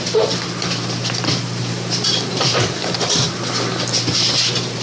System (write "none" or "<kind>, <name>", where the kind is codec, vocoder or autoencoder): vocoder, BigVGAN v2